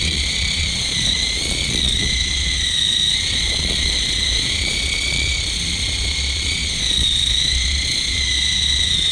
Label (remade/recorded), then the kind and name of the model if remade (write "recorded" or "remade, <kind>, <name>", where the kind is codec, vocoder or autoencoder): remade, vocoder, Vocos